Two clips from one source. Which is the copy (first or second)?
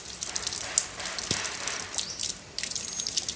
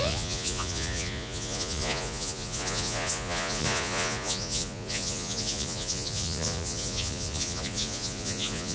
second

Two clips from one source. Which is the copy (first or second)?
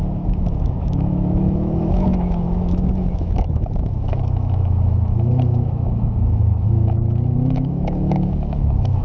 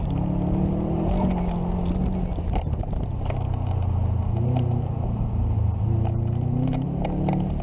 first